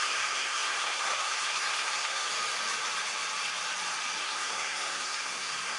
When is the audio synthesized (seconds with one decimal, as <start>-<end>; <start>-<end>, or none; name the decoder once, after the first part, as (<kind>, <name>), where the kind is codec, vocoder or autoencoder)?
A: 0.0-2.3 (codec, SNAC); 4.2-5.8